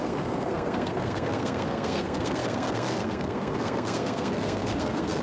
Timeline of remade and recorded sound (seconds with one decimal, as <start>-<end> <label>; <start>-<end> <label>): 0.0-5.2 remade